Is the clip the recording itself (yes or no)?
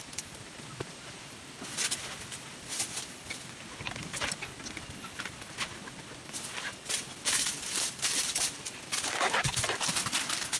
yes